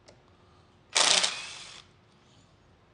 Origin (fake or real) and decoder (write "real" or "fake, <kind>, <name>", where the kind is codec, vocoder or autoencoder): real